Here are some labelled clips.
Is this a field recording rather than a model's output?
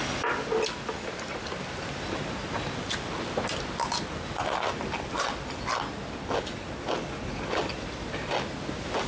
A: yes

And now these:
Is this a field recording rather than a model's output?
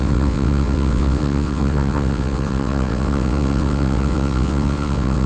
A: no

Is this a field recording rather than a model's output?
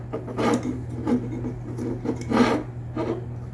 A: yes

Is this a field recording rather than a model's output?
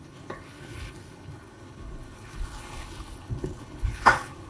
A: no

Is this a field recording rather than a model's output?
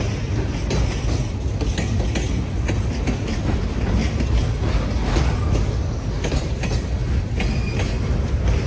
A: yes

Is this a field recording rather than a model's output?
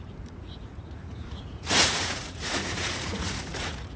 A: no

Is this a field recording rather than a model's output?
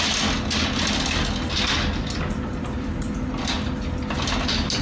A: yes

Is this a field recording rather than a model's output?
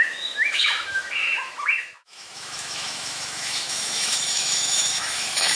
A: no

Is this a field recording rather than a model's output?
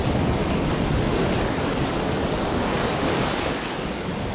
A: no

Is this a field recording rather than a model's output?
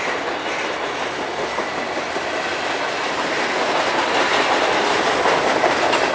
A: yes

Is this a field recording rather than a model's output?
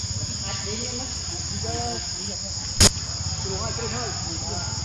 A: yes